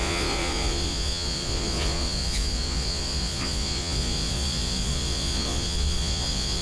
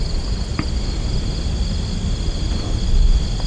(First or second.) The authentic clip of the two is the second